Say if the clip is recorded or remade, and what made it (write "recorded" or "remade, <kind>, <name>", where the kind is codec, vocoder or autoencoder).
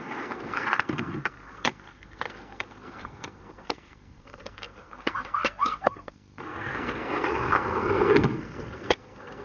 remade, codec, SNAC